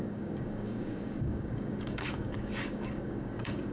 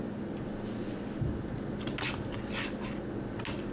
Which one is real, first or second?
second